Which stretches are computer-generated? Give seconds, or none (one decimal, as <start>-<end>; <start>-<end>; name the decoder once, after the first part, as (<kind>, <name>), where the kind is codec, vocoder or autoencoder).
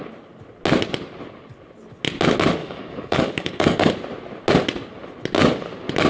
2.6-3.9 (codec, DAC)